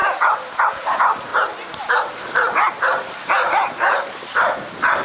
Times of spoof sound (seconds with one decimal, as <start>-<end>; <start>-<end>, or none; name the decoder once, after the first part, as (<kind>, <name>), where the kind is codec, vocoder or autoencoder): 0.0-0.6 (vocoder, BigVGAN v2); 1.3-4.3